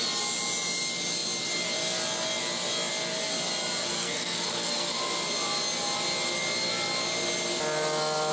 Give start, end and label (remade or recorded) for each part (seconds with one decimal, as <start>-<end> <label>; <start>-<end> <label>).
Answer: 0.0-3.9 recorded; 3.9-5.0 remade; 5.0-8.3 recorded